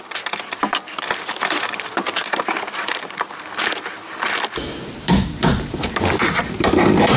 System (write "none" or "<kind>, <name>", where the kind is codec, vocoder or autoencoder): vocoder, BigVGAN v2